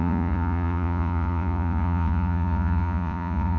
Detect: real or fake fake